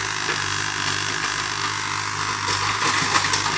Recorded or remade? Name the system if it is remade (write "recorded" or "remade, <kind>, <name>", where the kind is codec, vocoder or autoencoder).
recorded